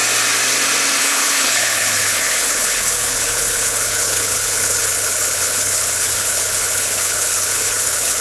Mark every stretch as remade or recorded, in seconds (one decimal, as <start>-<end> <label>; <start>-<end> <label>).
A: 0.0-1.0 recorded; 1.0-8.2 remade